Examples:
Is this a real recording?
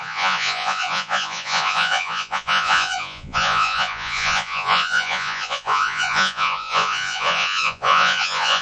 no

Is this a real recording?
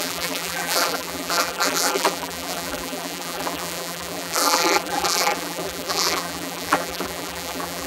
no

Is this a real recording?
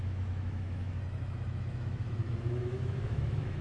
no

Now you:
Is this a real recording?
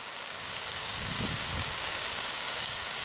no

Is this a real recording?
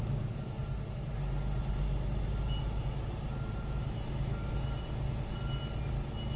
yes